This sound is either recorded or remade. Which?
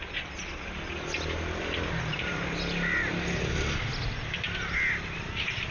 recorded